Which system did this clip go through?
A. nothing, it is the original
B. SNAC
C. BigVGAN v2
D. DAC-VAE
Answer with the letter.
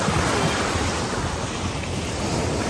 A